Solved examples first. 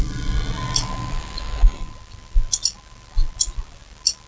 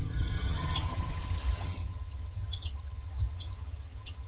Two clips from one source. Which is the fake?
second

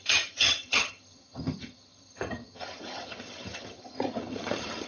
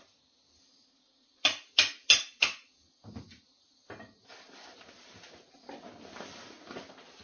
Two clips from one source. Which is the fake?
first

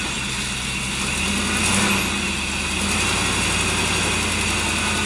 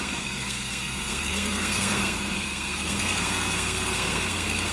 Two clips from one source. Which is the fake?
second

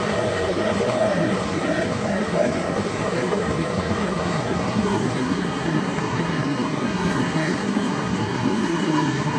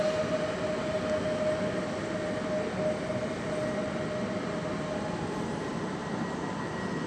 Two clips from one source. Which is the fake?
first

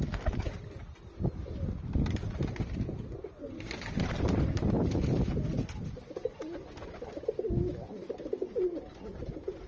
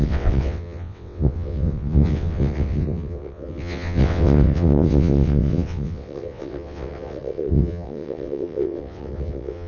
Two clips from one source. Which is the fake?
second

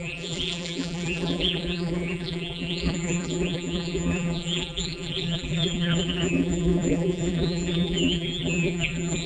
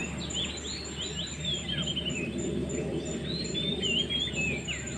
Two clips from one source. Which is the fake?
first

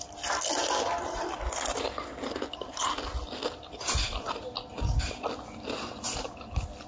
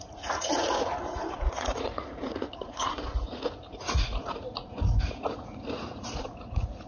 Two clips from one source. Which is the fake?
second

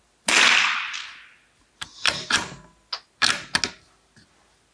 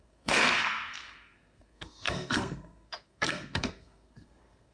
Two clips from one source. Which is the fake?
second